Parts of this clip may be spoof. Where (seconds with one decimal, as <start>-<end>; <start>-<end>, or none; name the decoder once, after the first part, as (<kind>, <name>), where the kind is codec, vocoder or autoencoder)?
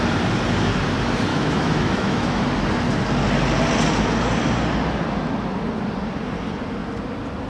1.3-2.4 (autoencoder, DAC-VAE)